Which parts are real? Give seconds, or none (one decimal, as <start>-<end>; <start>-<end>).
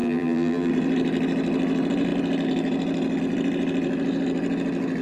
0.7-5.0